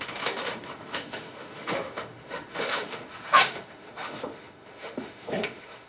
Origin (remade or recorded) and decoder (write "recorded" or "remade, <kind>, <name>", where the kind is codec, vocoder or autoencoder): remade, autoencoder, DAC-VAE